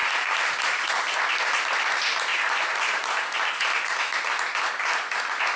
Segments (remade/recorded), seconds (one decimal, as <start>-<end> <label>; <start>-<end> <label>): 0.0-5.6 recorded